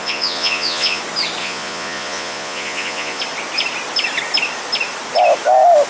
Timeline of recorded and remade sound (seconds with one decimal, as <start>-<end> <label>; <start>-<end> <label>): 0.0-1.0 remade; 1.0-1.4 recorded; 1.4-3.2 remade; 3.2-5.9 recorded